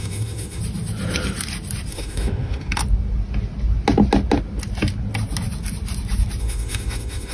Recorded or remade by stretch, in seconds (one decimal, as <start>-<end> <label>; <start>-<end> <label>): 0.0-0.6 remade; 0.6-1.9 recorded; 1.9-2.8 remade; 2.8-6.4 recorded; 6.4-7.3 remade